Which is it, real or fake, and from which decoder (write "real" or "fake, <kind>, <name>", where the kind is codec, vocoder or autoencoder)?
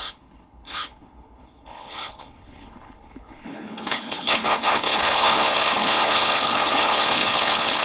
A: fake, codec, HILCodec